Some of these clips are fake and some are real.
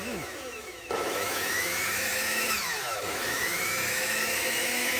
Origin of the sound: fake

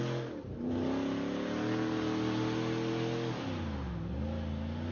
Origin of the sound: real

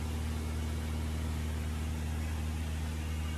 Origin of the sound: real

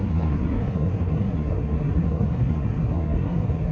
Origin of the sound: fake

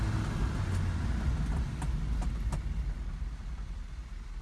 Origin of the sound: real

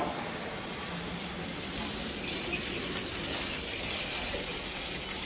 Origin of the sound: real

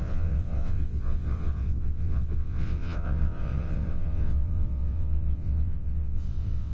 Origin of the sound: fake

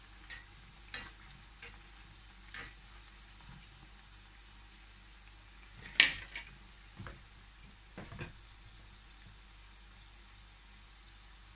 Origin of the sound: real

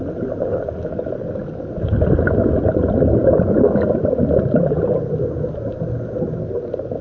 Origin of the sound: real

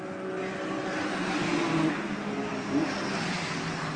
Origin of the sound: real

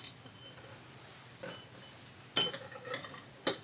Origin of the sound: real